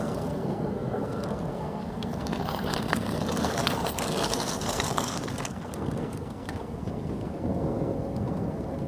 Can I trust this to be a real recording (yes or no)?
no